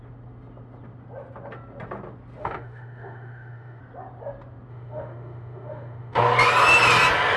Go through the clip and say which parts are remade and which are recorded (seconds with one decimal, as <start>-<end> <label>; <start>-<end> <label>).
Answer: 0.0-2.4 recorded; 2.4-3.8 remade; 3.8-4.7 recorded; 4.7-6.2 remade; 6.2-7.4 recorded